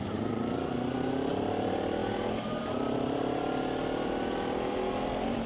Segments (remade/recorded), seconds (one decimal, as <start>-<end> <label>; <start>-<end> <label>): 0.0-5.5 recorded

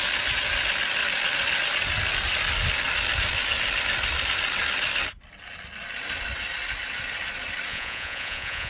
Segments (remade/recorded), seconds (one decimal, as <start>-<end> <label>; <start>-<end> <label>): 0.0-7.7 recorded; 7.7-8.7 remade

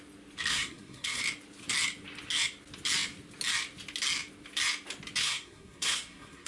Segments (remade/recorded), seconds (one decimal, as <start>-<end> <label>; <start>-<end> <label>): 0.0-0.5 recorded; 0.5-1.2 remade; 1.2-5.2 recorded; 5.2-6.5 remade